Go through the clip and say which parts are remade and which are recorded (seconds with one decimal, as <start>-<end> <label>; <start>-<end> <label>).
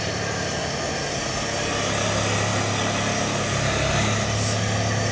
0.0-5.1 recorded